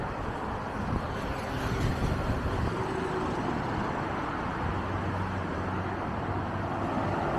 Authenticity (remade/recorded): recorded